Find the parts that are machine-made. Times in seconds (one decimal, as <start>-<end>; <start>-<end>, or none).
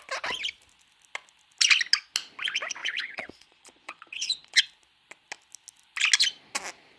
2.8-4.6